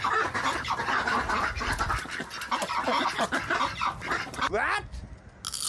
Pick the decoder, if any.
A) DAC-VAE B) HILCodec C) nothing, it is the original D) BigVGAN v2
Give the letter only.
C